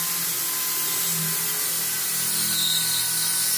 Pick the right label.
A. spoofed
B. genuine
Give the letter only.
B